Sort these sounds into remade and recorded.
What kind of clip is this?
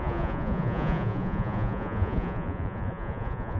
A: remade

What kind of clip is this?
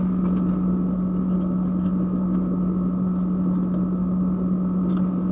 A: recorded